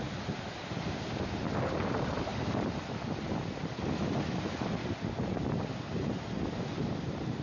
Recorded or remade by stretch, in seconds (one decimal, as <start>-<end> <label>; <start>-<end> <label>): 0.0-7.4 recorded